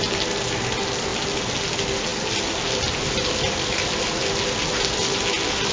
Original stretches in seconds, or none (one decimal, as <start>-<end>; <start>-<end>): 0.0-5.7

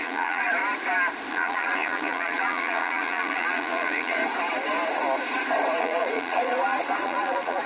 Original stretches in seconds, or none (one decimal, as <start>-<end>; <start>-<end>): 0.6-1.3; 4.2-5.8

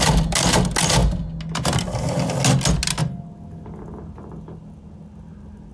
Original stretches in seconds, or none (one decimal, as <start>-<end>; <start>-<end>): 0.0-5.7

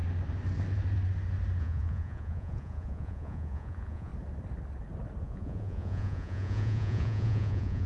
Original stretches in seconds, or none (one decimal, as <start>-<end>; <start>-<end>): 0.0-1.6; 4.1-5.2

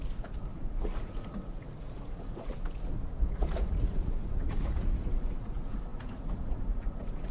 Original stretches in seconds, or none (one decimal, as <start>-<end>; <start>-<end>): none

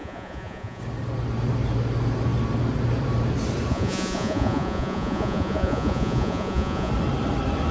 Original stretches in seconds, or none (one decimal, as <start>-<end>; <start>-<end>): 0.8-3.7; 6.9-7.7

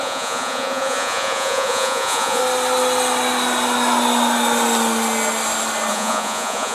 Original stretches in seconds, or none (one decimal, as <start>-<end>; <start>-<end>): 2.4-5.9